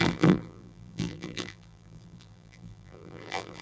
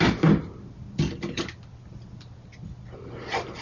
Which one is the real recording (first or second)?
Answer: second